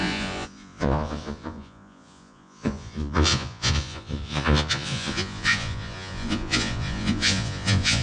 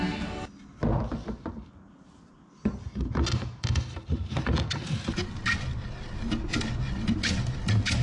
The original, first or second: second